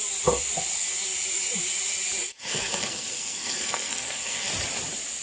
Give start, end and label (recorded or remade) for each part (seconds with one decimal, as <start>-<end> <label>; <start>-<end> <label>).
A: 0.0-2.3 recorded; 2.3-4.5 remade; 4.5-5.2 recorded